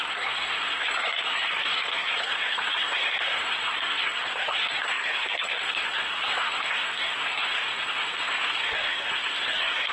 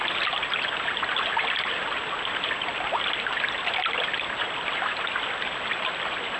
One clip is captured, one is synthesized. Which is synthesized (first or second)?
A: first